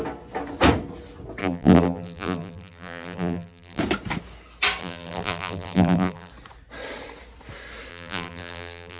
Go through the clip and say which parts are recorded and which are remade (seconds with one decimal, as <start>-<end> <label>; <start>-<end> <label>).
0.0-1.4 recorded; 1.4-3.8 remade; 3.8-4.8 recorded; 4.8-6.3 remade; 6.3-7.9 recorded; 7.9-9.0 remade